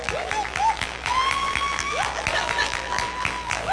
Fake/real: fake